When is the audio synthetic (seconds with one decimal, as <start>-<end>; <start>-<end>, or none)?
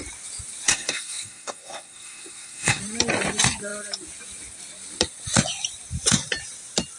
0.7-2.8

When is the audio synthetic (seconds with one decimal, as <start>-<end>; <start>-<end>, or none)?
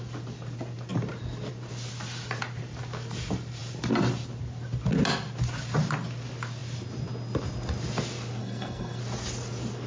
8.4-9.0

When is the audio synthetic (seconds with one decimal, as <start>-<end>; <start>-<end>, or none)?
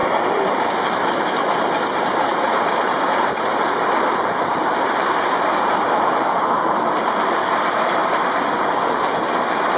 0.0-1.1; 2.3-7.5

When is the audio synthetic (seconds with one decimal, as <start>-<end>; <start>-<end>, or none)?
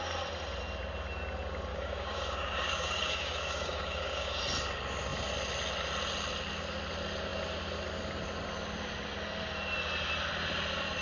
1.7-4.4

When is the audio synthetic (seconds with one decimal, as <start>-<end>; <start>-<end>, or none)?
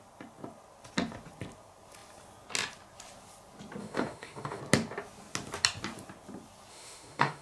3.8-4.6; 6.7-7.4